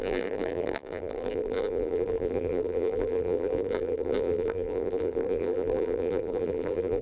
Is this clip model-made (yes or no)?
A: yes